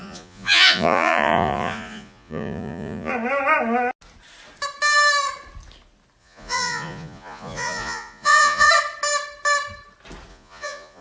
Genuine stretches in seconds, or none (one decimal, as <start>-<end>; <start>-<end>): 3.1-6.2; 8.7-10.3